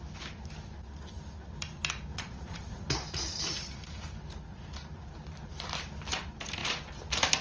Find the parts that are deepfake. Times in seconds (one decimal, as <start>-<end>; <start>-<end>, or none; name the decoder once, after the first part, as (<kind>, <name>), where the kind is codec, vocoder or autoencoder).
2.1-2.9 (vocoder, Vocos)